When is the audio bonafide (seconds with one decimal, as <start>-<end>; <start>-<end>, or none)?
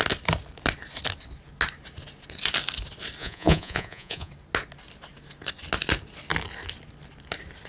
0.0-3.2; 4.3-7.7